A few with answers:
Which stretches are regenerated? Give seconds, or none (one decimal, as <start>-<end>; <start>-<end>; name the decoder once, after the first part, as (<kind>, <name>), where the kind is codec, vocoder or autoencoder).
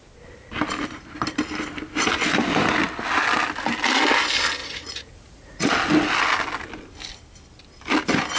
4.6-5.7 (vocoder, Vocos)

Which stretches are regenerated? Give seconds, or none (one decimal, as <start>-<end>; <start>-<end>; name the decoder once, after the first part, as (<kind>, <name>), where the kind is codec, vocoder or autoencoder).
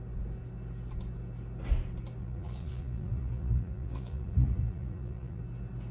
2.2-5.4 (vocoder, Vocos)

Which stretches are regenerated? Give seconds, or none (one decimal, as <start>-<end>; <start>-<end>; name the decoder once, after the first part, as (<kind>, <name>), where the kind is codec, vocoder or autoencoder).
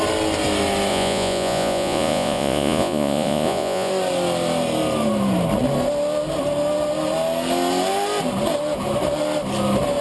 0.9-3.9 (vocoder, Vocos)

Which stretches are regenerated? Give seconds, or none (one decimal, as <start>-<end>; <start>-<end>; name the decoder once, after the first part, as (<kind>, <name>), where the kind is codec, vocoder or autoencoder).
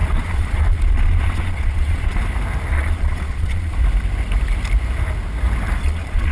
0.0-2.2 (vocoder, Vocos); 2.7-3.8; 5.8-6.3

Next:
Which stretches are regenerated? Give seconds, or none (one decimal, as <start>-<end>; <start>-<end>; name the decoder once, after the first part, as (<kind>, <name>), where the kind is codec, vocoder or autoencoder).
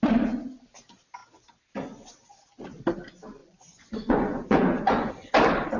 3.4-5.1 (vocoder, Vocos)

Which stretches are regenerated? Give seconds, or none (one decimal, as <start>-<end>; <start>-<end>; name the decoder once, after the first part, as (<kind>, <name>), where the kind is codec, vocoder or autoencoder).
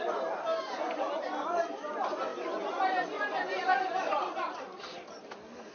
none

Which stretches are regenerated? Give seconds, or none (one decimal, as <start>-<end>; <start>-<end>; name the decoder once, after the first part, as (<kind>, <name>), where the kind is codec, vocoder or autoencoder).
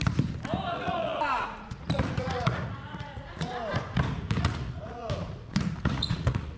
0.7-3.5 (vocoder, Vocos); 4.4-6.6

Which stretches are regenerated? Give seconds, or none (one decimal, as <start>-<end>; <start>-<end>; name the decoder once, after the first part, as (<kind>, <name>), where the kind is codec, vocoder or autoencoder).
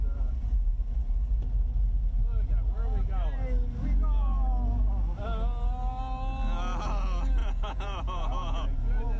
7.4-9.2 (vocoder, Vocos)